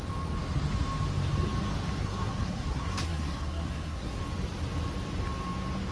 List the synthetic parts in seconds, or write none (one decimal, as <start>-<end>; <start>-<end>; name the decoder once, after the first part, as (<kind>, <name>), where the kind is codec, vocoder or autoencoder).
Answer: 2.0-4.2 (codec, SNAC)